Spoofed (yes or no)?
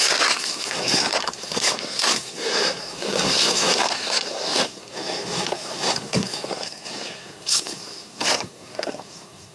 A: yes